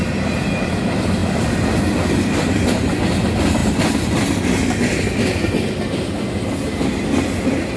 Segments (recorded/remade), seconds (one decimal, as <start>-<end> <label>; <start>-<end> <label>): 0.0-7.8 recorded